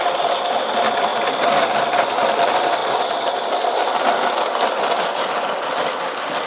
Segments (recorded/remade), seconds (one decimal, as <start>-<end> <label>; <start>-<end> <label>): 0.0-6.5 recorded